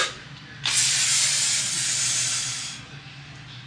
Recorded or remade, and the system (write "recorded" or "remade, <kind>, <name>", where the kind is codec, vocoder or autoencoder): recorded